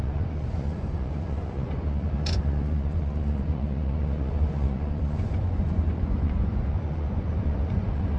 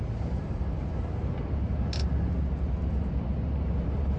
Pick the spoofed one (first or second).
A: first